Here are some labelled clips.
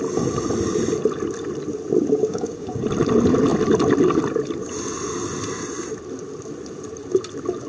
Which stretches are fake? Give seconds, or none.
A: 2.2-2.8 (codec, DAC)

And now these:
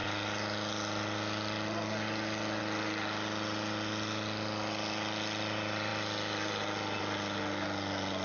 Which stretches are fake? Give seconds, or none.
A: none

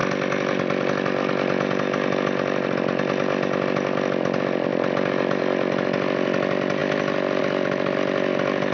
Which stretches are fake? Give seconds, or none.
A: none

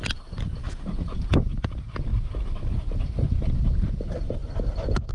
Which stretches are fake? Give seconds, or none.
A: none

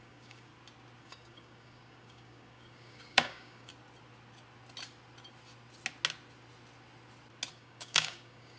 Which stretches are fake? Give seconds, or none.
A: 0.0-0.5 (codec, DAC); 1.0-3.7; 7.5-8.6

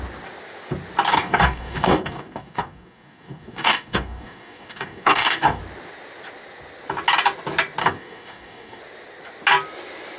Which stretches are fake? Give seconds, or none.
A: 1.1-5.6 (codec, DAC); 7.8-8.8